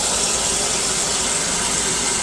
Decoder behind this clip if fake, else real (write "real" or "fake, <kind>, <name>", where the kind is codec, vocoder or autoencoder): real